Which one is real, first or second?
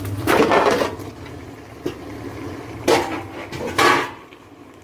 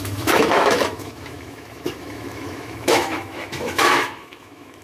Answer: first